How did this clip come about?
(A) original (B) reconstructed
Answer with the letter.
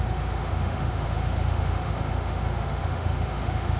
B